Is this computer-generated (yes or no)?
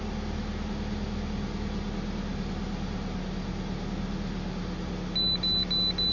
no